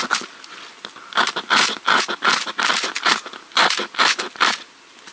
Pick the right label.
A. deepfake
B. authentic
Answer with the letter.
B